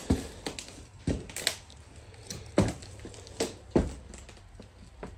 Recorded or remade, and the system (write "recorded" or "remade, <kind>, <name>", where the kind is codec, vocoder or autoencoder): recorded